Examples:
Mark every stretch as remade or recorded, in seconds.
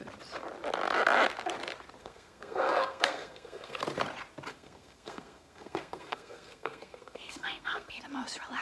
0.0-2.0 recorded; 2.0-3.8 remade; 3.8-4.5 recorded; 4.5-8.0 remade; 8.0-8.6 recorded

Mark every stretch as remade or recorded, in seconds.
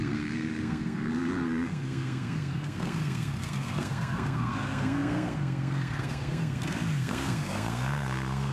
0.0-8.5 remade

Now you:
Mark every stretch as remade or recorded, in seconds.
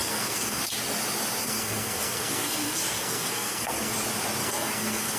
0.0-0.6 remade; 0.6-1.4 recorded; 1.4-3.9 remade; 3.9-4.4 recorded; 4.4-5.2 remade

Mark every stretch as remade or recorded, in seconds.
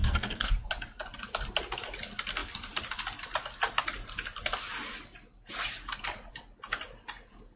0.0-0.5 remade; 0.5-7.6 recorded